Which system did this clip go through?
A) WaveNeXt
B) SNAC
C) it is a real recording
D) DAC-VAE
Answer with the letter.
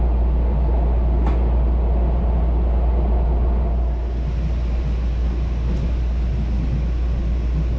C